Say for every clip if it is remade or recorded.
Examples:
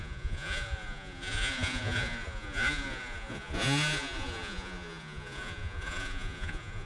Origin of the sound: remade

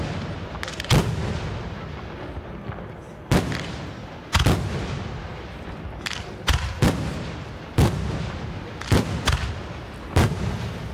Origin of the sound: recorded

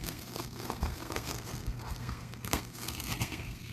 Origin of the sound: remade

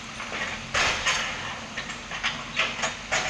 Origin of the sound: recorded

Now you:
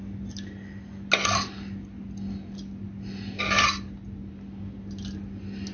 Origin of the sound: recorded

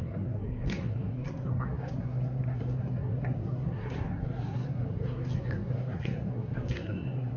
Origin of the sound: remade